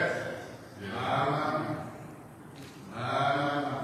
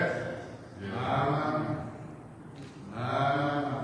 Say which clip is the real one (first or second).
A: second